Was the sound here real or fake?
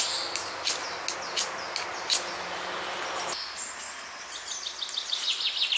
real